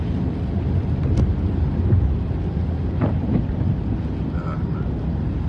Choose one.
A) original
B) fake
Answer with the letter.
A